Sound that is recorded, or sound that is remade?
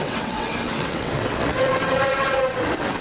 remade